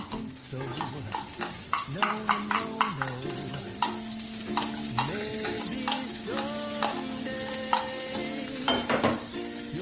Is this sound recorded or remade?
recorded